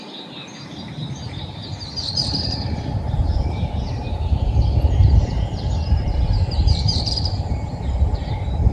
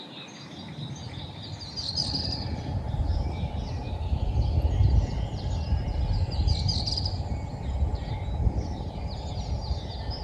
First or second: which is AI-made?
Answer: first